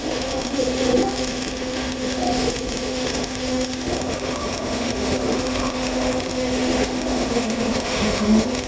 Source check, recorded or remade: remade